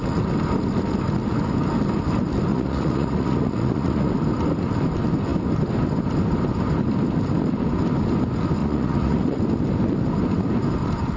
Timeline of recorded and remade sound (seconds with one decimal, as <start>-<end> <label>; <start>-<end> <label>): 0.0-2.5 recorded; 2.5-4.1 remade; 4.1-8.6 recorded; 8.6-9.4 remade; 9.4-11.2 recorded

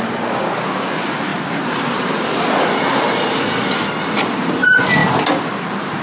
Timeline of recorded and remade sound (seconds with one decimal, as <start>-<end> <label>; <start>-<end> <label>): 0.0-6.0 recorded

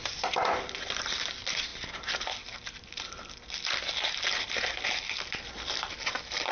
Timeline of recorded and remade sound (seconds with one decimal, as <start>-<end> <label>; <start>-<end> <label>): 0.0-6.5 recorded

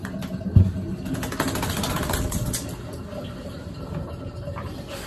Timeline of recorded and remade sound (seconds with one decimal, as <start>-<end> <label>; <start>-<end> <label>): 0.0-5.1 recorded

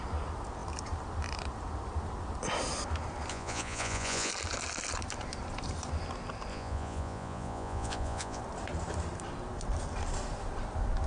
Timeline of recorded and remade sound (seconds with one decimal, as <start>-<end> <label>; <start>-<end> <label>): 0.0-3.3 recorded; 3.3-4.3 remade; 4.3-6.5 recorded; 6.5-8.4 remade; 8.4-11.1 recorded

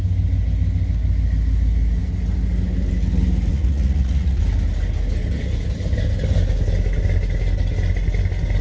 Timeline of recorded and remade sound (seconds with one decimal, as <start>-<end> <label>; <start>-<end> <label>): 0.0-3.5 recorded; 3.5-4.4 remade; 4.4-8.6 recorded